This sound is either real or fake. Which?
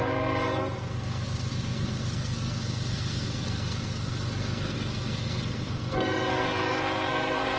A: fake